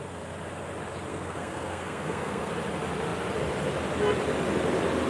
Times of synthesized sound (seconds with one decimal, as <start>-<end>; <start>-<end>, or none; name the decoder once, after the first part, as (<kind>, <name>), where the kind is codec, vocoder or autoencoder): 1.1-2.5 (codec, SNAC)